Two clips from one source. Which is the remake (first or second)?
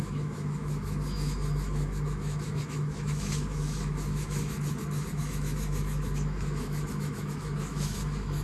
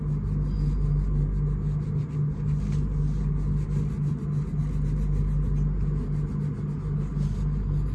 first